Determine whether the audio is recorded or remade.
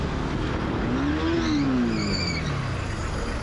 recorded